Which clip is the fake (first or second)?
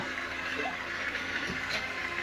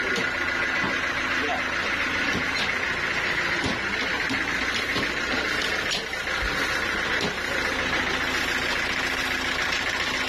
first